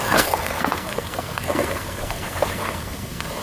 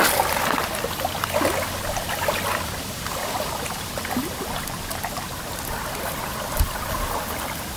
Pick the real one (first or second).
second